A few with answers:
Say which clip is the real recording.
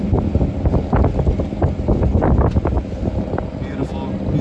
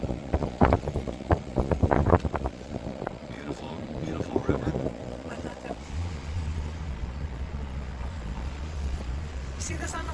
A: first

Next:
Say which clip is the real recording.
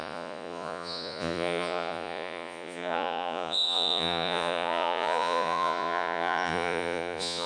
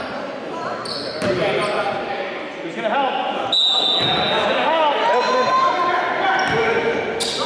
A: second